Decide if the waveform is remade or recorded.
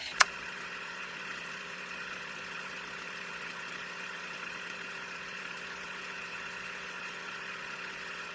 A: remade